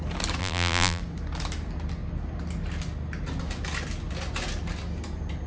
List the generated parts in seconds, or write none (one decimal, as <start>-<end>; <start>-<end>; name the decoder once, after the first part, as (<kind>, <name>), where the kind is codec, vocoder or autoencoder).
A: 0.4-1.0 (vocoder, BigVGAN v2)